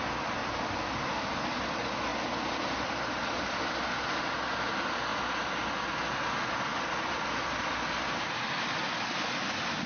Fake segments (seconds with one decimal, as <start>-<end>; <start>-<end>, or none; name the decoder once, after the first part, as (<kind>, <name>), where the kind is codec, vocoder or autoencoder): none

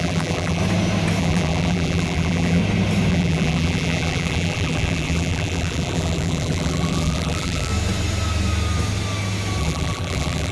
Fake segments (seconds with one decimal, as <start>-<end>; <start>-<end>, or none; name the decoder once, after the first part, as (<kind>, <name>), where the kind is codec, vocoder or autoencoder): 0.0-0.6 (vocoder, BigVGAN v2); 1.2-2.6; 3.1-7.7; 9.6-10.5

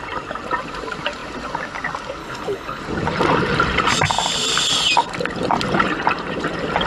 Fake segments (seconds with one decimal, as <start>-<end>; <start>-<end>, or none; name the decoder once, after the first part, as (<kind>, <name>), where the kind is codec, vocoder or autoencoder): 2.2-2.8 (codec, HILCodec)

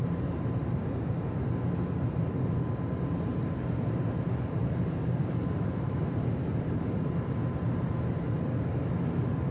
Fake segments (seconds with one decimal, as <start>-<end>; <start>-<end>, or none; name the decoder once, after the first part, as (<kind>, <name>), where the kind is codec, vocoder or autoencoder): 0.0-0.6 (vocoder, BigVGAN v2); 3.3-6.7